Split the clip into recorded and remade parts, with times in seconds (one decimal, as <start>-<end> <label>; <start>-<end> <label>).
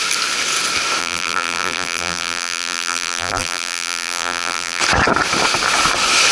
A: 0.0-1.0 recorded; 1.0-4.8 remade; 4.8-6.3 recorded